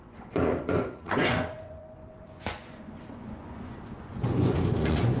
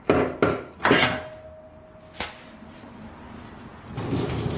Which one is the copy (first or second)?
first